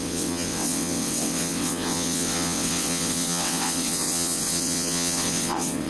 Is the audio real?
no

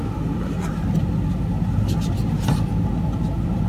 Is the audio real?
yes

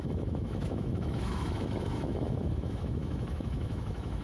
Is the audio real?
no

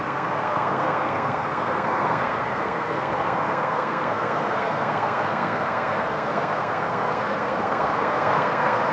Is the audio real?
no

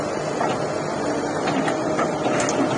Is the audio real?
yes